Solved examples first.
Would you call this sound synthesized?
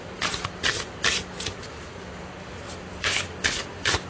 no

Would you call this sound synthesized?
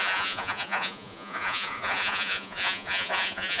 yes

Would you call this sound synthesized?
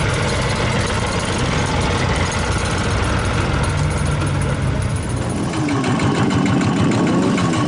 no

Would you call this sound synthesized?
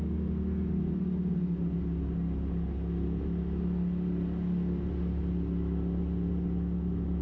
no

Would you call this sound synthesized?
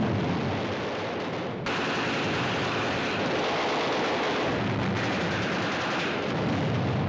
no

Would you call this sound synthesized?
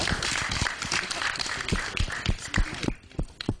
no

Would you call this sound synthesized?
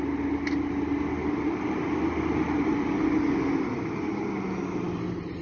no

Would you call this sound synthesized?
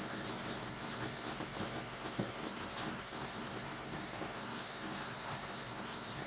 yes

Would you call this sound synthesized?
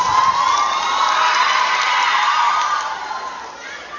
no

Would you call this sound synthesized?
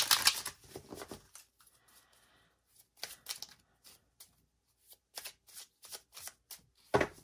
no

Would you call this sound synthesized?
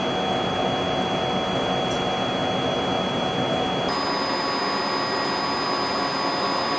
no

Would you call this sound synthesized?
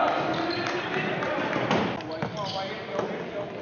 no